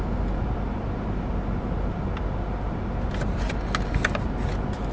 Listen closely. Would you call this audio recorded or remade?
recorded